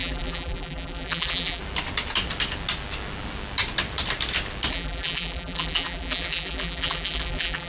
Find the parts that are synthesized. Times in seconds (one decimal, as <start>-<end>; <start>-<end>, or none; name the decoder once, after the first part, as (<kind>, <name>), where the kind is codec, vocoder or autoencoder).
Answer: 0.0-1.6 (vocoder, BigVGAN v2); 4.7-7.7